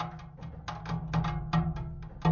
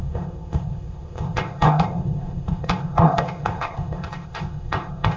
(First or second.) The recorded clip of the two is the first